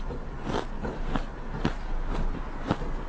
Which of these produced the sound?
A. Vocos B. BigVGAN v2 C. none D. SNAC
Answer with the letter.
C